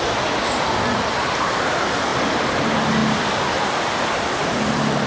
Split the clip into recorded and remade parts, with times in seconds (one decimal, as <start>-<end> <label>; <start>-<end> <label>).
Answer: 0.0-5.1 recorded